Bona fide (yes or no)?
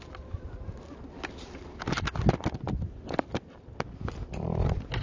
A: yes